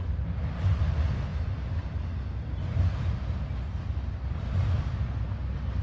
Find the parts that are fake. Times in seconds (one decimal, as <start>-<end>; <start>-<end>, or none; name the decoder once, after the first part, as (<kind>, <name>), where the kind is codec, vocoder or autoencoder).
none